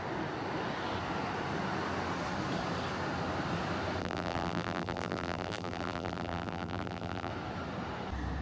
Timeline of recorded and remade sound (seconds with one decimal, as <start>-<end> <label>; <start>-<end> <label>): 0.0-4.0 recorded; 4.0-7.3 remade; 7.3-8.4 recorded